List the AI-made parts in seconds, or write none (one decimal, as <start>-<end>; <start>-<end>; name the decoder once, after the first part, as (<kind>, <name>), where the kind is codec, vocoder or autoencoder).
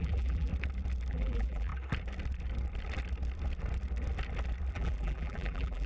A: 0.0-0.5 (vocoder, BigVGAN v2); 1.1-1.7; 4.7-5.9